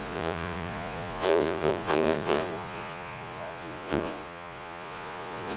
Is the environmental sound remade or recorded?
remade